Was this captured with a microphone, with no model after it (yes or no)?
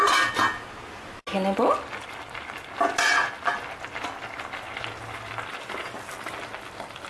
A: yes